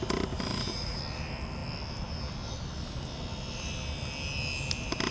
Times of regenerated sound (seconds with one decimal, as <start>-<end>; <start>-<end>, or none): 0.5-1.0